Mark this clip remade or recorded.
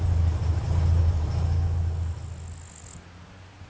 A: recorded